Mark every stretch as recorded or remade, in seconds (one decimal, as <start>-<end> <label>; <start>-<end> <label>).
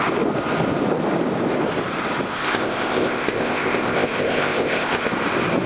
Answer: 0.0-2.3 recorded; 2.3-5.1 remade; 5.1-5.7 recorded